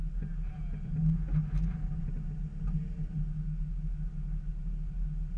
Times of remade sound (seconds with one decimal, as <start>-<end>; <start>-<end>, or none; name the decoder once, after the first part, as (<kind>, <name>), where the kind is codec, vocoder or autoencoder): none